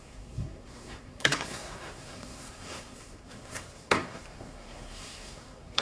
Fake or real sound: fake